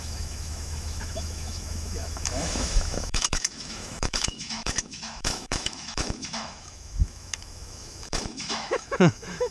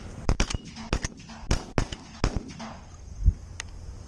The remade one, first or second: first